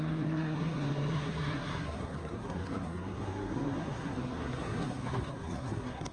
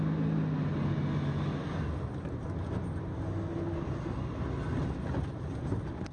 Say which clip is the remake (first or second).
first